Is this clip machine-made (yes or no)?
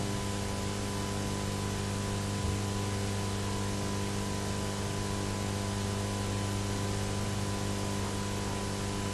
no